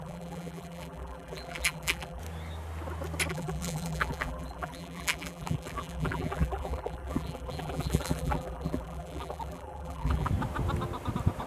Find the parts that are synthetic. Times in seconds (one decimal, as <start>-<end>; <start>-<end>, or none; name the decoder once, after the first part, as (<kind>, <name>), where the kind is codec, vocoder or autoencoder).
0.0-2.2 (vocoder, BigVGAN v2); 3.3-10.3